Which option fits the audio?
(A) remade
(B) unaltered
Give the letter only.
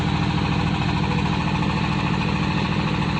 A